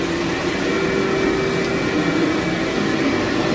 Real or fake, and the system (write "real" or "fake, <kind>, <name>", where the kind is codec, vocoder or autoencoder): real